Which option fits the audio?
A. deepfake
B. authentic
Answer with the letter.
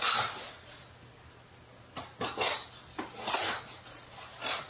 B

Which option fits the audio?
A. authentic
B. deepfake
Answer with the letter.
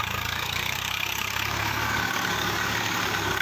B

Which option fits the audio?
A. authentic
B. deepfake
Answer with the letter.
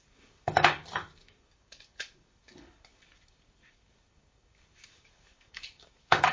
B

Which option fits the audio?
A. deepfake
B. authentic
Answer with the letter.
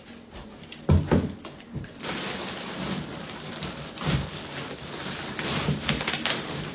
B